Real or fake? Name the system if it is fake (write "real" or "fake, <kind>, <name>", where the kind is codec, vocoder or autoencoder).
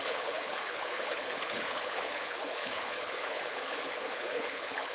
fake, codec, HILCodec